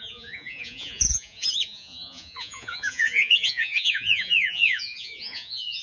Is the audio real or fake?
fake